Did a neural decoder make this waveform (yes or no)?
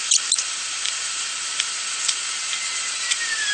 yes